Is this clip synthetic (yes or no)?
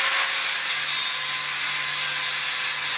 no